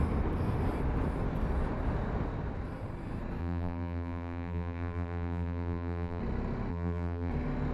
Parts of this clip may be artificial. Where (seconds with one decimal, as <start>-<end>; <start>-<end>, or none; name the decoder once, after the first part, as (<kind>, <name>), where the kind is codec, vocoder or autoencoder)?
3.4-6.2 (vocoder, BigVGAN v2); 6.7-7.3